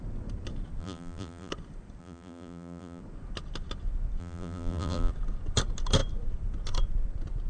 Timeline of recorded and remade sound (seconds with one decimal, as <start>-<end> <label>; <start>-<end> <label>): 0.0-0.8 recorded; 0.8-1.5 remade; 1.5-2.0 recorded; 2.0-3.0 remade; 3.0-4.2 recorded; 4.2-5.1 remade; 5.1-7.5 recorded